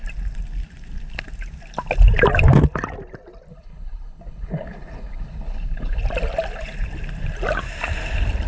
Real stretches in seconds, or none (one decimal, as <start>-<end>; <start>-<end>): 0.0-3.5; 6.0-8.5